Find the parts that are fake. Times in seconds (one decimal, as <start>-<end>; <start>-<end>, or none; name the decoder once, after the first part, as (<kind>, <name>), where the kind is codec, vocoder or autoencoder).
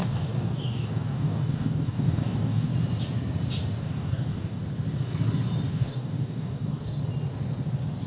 0.0-2.7 (codec, DAC); 3.8-4.6; 5.7-7.0